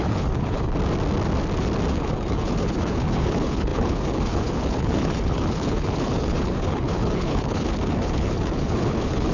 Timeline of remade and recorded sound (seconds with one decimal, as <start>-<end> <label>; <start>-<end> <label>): 0.0-0.7 remade; 0.7-1.9 recorded; 1.9-9.3 remade